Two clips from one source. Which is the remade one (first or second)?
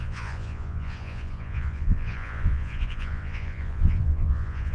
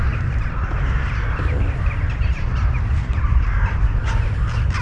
first